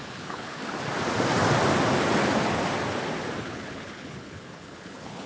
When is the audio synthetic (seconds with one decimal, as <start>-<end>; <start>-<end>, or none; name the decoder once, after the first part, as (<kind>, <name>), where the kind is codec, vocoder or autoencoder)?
0.0-0.6 (codec, HILCodec); 3.4-5.3